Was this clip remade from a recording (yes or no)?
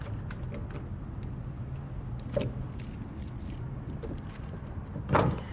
no